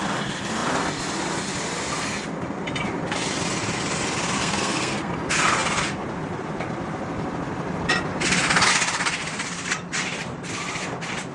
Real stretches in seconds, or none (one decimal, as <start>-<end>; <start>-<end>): 0.0-4.4; 5.1-11.3

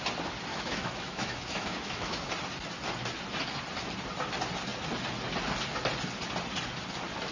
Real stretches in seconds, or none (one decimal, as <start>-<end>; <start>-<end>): 0.0-0.5; 2.3-7.3

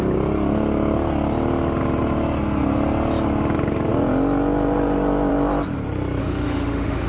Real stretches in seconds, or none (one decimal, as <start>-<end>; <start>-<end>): 0.0-6.2